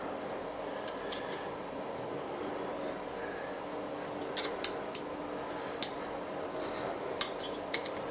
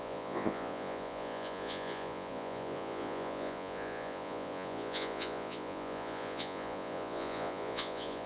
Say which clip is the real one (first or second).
first